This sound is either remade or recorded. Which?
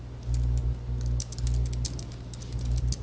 recorded